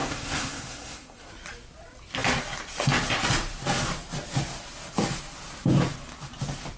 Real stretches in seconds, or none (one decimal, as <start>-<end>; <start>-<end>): 1.3-6.8